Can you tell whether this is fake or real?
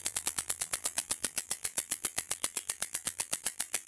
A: fake